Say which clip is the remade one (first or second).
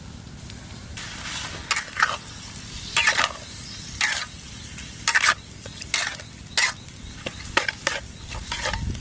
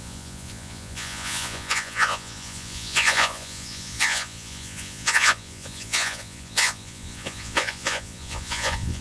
second